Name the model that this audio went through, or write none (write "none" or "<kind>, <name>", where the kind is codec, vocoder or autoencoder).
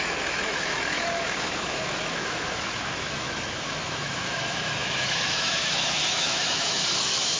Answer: autoencoder, DAC-VAE